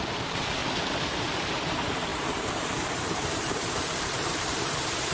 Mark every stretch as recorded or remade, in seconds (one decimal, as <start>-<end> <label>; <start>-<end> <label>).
0.0-0.6 remade; 0.6-1.2 recorded; 1.2-5.1 remade